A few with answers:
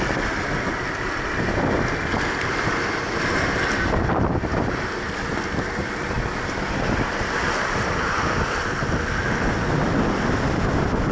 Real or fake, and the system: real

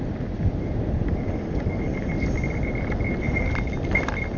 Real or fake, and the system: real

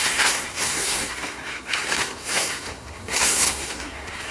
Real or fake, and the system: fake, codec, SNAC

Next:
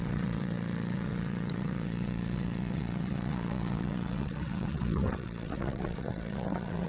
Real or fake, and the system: fake, vocoder, WaveNeXt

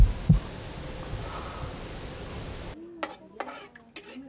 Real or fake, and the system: real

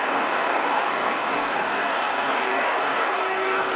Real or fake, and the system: fake, codec, DAC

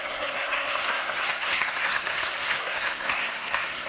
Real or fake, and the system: fake, codec, SNAC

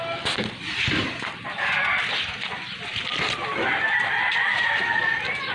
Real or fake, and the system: real